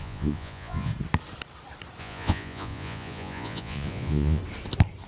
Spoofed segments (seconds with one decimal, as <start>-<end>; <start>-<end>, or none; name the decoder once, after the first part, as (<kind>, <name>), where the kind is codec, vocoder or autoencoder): 0.0-0.9 (vocoder, Vocos); 2.0-4.4